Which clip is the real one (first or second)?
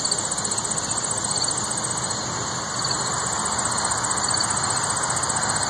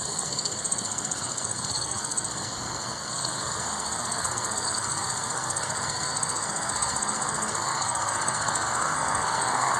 first